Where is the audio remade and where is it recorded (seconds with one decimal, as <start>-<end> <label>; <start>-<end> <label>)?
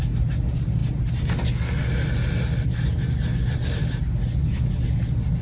0.0-5.4 recorded